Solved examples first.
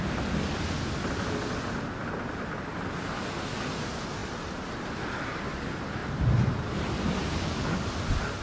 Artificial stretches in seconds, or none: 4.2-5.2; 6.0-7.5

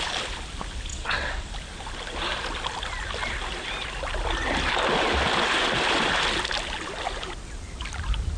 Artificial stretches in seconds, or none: 0.9-1.5

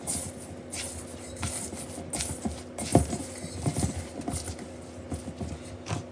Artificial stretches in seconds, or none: none

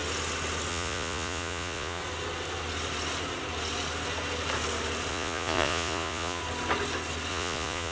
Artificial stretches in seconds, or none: 0.7-2.0; 5.1-6.4; 7.3-7.9

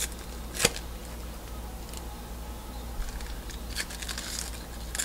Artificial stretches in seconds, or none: none